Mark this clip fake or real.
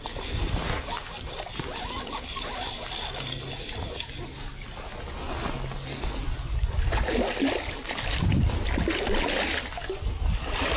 real